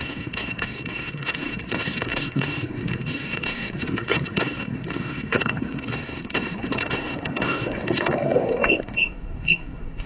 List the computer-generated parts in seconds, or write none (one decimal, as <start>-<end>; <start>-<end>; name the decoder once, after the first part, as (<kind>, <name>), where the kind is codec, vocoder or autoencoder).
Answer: 0.0-10.1 (codec, SNAC)